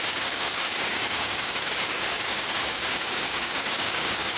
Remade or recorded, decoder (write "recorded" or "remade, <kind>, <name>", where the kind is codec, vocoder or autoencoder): remade, codec, DAC